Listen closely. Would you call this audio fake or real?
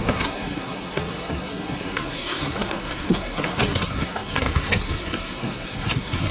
fake